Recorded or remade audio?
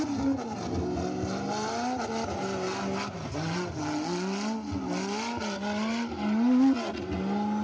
recorded